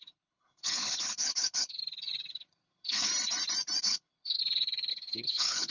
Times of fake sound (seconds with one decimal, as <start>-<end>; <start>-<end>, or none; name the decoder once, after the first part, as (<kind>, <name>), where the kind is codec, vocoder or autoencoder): 0.0-1.8 (codec, HILCodec); 2.3-3.1; 3.8-4.4; 4.9-5.7